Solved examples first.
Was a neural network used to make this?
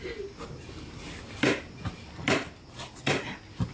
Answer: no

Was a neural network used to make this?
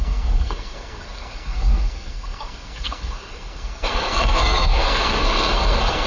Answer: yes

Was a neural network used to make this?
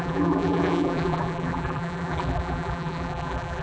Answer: yes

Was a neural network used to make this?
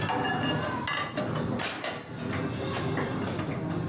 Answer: no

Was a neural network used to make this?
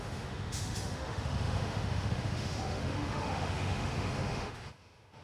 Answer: yes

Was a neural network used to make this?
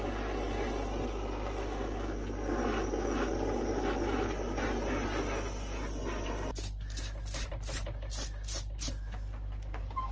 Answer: no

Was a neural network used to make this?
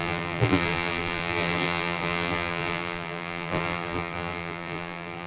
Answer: yes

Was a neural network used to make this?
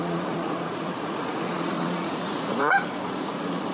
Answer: yes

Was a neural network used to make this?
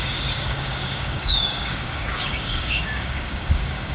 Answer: yes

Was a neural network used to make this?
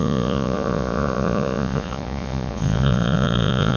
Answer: yes